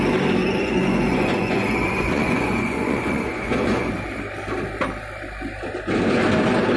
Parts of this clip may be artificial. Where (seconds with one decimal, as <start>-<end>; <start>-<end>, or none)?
0.4-3.9